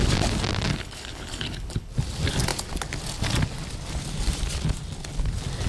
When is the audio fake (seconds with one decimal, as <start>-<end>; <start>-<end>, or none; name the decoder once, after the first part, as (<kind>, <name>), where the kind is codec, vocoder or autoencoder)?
0.7-1.9 (codec, HILCodec)